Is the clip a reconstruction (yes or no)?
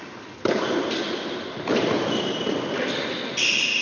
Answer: no